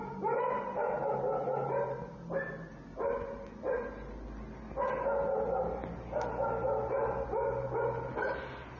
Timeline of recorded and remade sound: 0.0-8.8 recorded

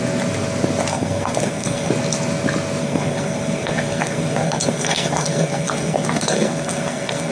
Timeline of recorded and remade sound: 0.0-0.9 recorded; 0.9-1.9 remade; 1.9-2.8 recorded; 2.8-7.3 remade

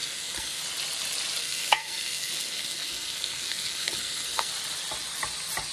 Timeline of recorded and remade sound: 0.0-0.6 remade; 0.6-1.4 recorded; 1.4-4.5 remade; 4.5-5.7 recorded

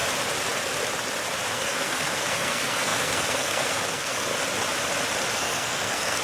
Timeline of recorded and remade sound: 0.0-1.5 recorded; 1.5-4.3 remade; 4.3-5.3 recorded; 5.3-6.2 remade

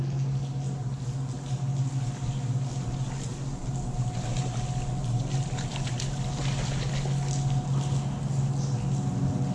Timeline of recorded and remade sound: 0.0-9.5 recorded

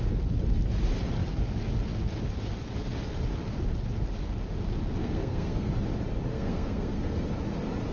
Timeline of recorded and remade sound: 0.0-5.0 recorded; 5.0-5.7 remade; 5.7-6.3 recorded; 6.3-7.1 remade; 7.1-7.9 recorded